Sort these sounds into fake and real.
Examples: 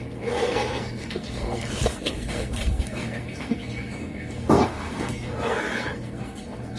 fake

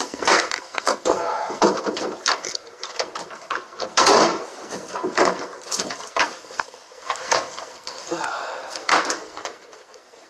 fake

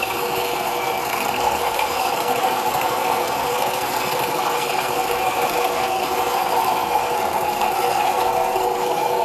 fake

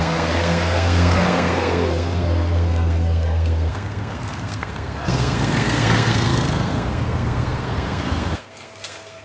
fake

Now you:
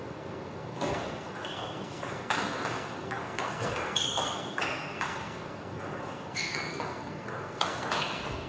fake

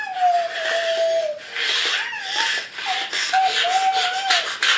real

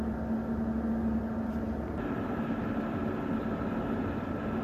real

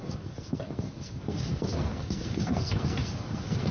fake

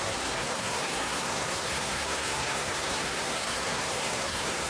fake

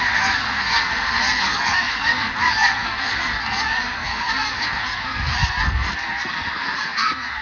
fake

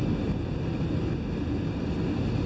real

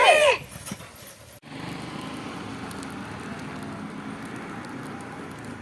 real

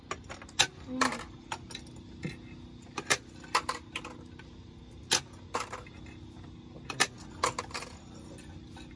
real